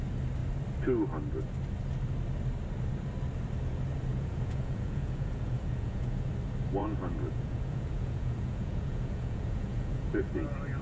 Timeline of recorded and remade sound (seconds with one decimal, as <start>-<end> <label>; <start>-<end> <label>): 0.0-4.1 recorded; 4.1-6.3 remade; 6.3-6.8 recorded; 6.8-10.3 remade; 10.3-10.8 recorded